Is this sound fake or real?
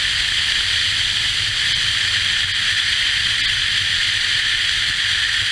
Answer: real